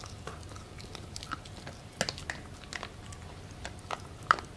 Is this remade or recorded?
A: recorded